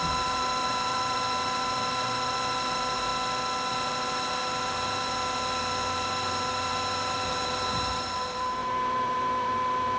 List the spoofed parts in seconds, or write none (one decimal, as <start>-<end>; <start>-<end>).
0.0-3.1; 3.7-10.0